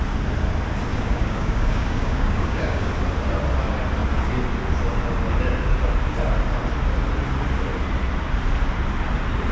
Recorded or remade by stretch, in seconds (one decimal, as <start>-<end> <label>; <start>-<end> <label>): 0.0-0.9 recorded; 0.9-2.9 remade; 2.9-9.5 recorded